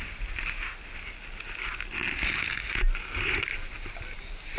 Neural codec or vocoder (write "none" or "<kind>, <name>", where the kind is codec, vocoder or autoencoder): none